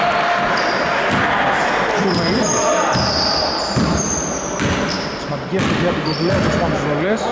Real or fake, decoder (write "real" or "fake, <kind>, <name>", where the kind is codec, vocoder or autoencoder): real